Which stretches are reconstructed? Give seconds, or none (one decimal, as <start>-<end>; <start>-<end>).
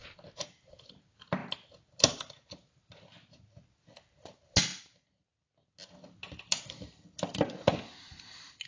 none